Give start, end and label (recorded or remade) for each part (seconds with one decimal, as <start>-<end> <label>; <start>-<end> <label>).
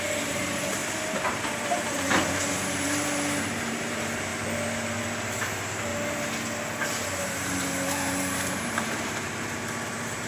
0.0-4.3 remade; 4.3-5.0 recorded; 5.0-5.9 remade; 5.9-7.0 recorded; 7.0-10.3 remade